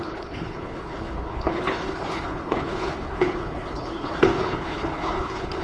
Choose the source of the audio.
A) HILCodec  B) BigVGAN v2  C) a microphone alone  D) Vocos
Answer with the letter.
A